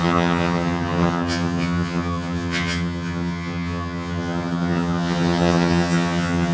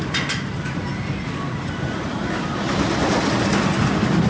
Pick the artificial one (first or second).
first